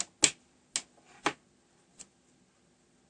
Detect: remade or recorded recorded